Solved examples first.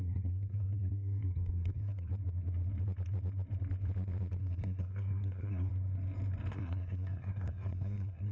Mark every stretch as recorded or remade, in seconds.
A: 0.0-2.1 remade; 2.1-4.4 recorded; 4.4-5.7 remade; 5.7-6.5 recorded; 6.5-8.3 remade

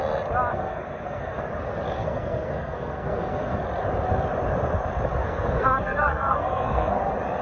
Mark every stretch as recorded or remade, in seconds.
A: 0.0-0.5 recorded; 0.5-1.5 remade; 1.5-2.0 recorded; 2.0-3.6 remade; 3.6-5.2 recorded; 5.2-7.0 remade; 7.0-7.4 recorded

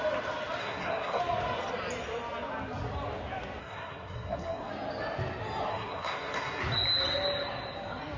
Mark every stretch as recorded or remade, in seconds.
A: 0.0-0.6 recorded; 0.6-1.2 remade; 1.2-3.6 recorded; 3.6-4.7 remade; 4.7-5.7 recorded; 5.7-6.6 remade; 6.6-8.2 recorded